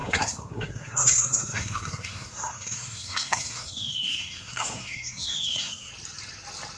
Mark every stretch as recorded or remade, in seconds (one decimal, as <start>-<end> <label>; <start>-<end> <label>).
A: 0.0-5.9 remade; 5.9-6.8 recorded